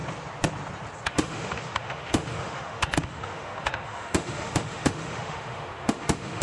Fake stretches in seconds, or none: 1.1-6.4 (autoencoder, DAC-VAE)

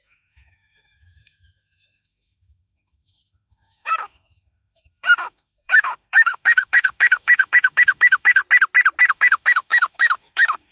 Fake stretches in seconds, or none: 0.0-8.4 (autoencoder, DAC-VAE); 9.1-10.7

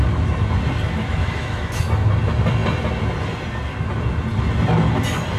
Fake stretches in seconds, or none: 1.2-1.8 (autoencoder, DAC-VAE)